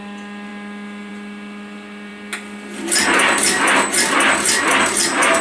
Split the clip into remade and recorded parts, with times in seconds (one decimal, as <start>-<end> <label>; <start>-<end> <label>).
0.0-5.4 recorded